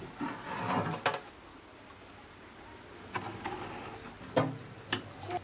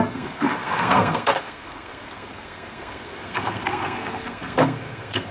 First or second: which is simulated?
second